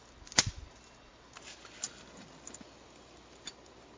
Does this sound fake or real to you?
real